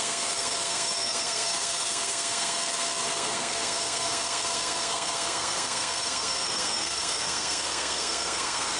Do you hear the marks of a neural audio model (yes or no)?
yes